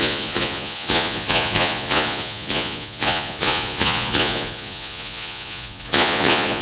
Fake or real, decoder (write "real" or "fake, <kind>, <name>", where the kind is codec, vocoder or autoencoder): fake, vocoder, Vocos